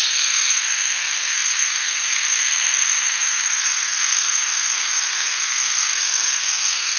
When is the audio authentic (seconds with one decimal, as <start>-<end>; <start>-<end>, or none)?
none